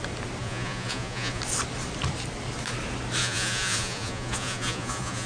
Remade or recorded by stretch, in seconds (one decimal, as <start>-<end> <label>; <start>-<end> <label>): 0.0-0.4 recorded; 0.4-1.4 remade; 1.4-3.2 recorded; 3.2-5.3 remade